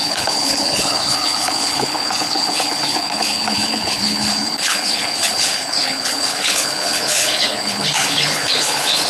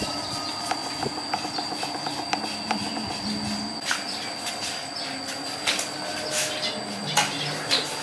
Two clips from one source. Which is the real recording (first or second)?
second